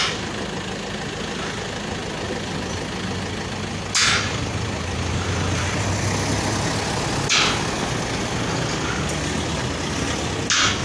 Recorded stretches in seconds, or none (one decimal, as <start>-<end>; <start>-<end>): 0.0-10.8